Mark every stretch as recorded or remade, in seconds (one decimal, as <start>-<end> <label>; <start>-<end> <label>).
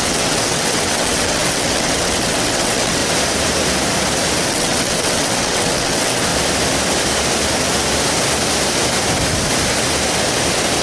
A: 0.0-3.0 remade; 3.0-4.5 recorded; 4.5-6.3 remade; 6.3-10.8 recorded